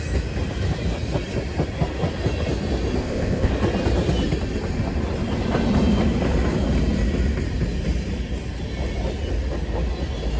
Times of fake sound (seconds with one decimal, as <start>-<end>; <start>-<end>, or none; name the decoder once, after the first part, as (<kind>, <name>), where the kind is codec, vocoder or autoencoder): 3.0-3.5 (codec, ZipCodec)